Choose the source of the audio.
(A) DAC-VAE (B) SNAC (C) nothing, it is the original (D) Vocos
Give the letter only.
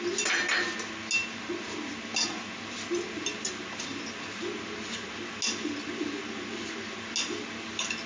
C